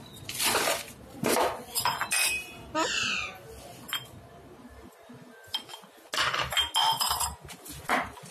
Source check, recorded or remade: recorded